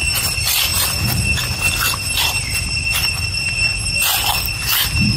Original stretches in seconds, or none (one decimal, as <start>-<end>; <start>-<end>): 0.0-5.2